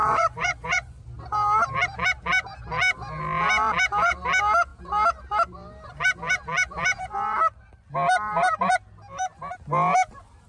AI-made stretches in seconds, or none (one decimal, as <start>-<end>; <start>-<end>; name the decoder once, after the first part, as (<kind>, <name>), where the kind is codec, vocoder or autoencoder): 0.0-1.0 (vocoder, Vocos)